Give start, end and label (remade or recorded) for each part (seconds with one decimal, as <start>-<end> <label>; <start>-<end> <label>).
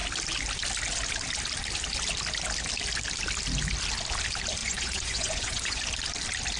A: 0.0-4.6 recorded; 4.6-5.8 remade; 5.8-6.6 recorded